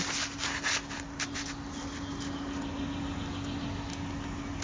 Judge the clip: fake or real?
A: real